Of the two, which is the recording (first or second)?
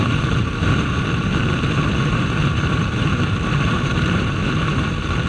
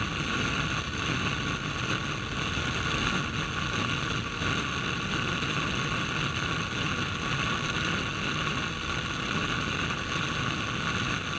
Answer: second